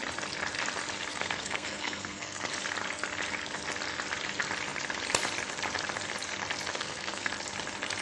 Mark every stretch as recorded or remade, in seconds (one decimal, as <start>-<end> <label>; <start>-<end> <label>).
0.0-1.1 recorded; 1.1-2.5 remade; 2.5-6.7 recorded; 6.7-7.3 remade; 7.3-8.0 recorded